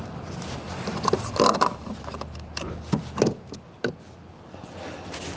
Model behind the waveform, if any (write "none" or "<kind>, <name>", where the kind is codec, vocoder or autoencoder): none